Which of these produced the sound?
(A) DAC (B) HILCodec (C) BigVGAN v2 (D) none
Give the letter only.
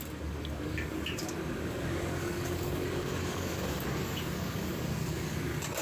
A